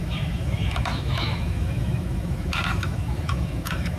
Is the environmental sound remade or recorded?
remade